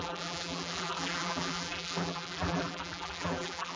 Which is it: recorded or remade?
remade